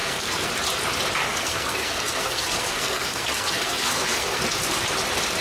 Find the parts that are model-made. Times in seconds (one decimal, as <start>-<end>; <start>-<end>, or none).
0.0-0.5; 1.2-4.4